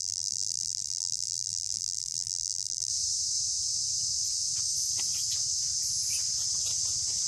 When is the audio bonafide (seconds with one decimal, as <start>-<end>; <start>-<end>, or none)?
2.9-7.3